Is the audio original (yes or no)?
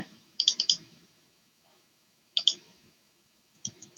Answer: no